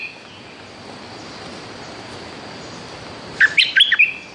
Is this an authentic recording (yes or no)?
yes